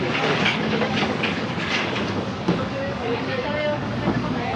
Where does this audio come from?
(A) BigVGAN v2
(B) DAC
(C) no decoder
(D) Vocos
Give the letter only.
B